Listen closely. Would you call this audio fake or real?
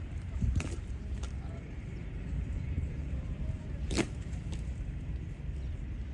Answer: fake